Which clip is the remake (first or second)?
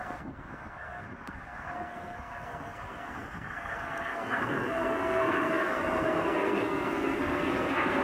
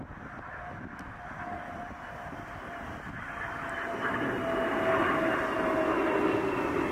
first